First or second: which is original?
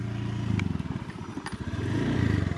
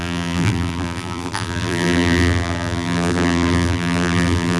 first